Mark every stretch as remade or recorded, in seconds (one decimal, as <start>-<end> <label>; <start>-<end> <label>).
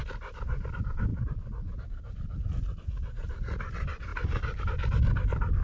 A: 0.0-5.6 recorded